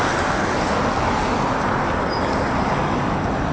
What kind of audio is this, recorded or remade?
recorded